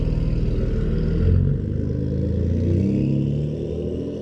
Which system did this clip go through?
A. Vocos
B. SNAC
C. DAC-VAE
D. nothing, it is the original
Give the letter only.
D